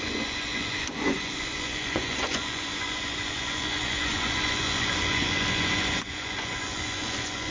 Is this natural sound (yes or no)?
no